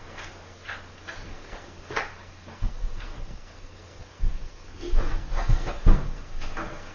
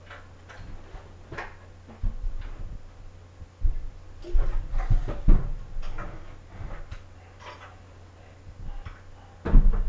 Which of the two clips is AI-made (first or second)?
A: first